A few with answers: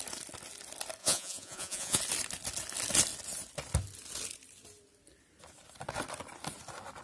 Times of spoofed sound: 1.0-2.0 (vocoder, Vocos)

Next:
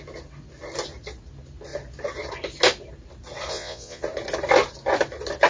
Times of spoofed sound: 3.5-4.0 (vocoder, Vocos)

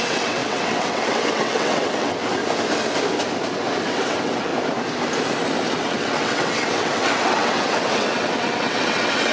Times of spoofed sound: 0.0-2.4 (vocoder, WaveNeXt); 3.9-4.5; 5.7-9.3

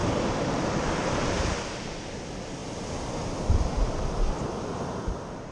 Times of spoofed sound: none

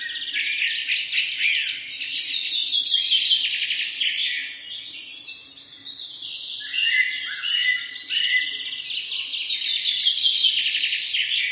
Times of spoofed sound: none